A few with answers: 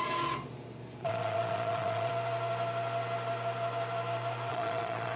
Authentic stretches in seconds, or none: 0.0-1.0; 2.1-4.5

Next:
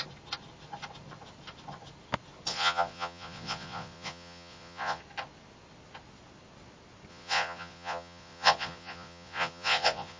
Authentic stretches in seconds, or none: 0.0-2.5; 5.0-7.1

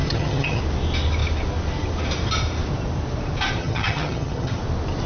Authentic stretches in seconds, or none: 0.6-3.6; 4.6-5.1

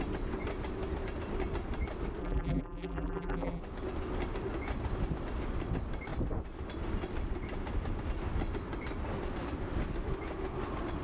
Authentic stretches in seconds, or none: 0.0-2.2; 3.6-11.0

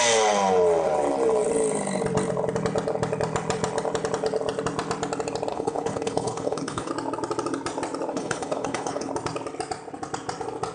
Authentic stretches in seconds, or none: 0.0-5.5; 6.9-8.1; 9.1-10.7

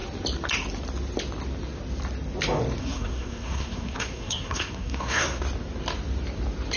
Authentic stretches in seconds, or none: 0.0-2.8; 5.4-6.8